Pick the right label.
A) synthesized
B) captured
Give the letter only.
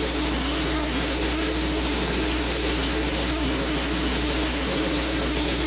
A